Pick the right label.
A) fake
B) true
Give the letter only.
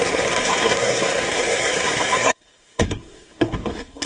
A